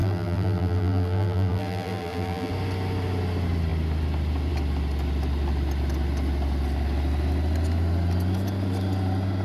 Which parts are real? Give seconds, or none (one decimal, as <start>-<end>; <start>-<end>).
2.5-9.4